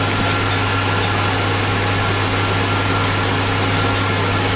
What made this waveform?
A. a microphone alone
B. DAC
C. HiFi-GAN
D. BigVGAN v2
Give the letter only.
A